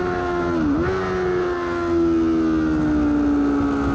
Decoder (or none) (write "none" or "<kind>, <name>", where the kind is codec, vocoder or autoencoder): none